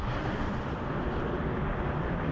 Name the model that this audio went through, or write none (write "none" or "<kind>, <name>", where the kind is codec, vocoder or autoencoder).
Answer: none